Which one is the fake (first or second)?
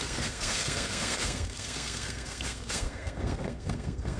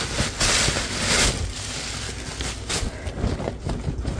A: first